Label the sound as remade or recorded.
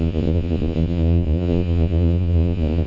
remade